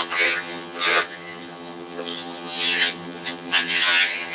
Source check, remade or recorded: remade